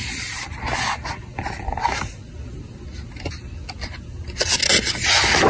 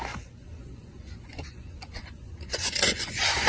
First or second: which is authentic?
first